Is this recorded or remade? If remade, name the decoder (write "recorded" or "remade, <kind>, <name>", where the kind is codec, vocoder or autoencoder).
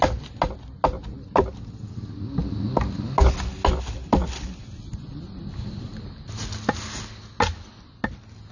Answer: recorded